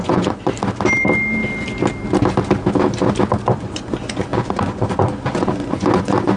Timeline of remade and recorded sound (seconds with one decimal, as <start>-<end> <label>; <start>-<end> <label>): 0.0-0.5 remade; 0.5-3.6 recorded; 3.6-6.4 remade